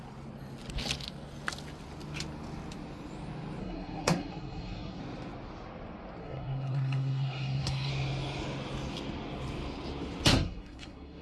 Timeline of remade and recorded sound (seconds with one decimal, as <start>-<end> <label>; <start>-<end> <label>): 0.0-3.6 recorded; 3.6-5.0 remade; 5.0-6.2 recorded; 6.2-7.9 remade; 7.9-10.3 recorded; 10.3-11.2 remade